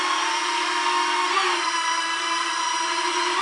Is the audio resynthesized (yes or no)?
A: no